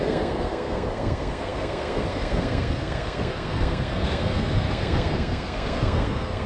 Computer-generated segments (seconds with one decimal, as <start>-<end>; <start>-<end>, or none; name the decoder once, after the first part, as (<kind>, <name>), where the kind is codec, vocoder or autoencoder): 0.0-6.5 (codec, SNAC)